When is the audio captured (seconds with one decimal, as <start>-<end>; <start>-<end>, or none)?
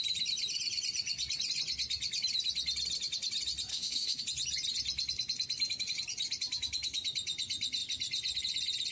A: 0.0-3.7; 4.2-8.9